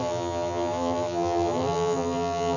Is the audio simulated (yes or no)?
yes